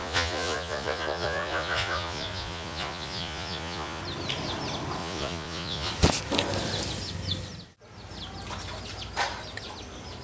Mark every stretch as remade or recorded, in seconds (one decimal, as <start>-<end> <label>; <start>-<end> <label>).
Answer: 0.0-4.0 remade; 4.0-5.0 recorded; 5.0-5.9 remade; 5.9-10.2 recorded